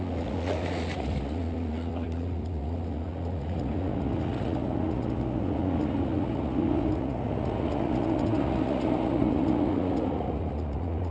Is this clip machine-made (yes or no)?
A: yes